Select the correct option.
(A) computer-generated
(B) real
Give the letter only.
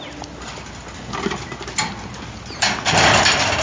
B